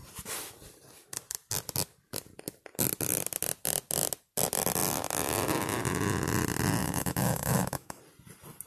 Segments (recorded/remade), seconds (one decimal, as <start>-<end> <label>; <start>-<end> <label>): 0.0-6.8 recorded; 6.8-8.0 remade; 8.0-8.7 recorded